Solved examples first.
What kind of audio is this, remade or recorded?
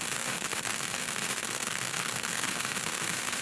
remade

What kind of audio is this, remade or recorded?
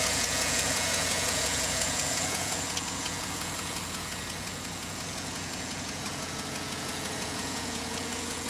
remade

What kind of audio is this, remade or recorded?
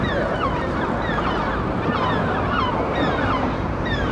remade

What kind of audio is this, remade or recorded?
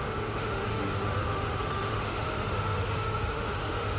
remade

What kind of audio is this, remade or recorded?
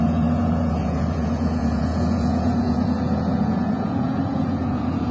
remade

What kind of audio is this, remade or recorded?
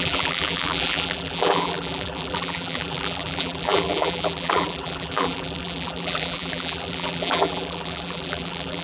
remade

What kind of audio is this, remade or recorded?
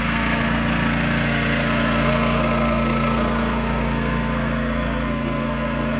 remade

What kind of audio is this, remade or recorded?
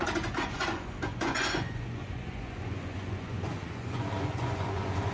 remade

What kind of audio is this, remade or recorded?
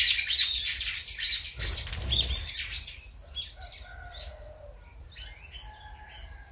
recorded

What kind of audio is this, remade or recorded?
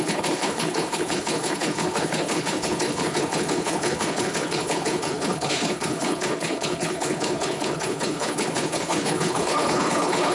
remade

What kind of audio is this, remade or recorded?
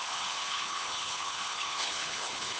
remade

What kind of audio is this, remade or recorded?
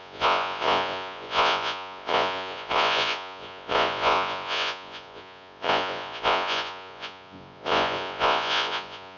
remade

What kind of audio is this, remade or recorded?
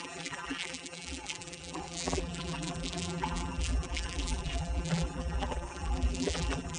remade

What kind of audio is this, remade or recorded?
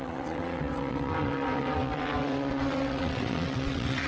remade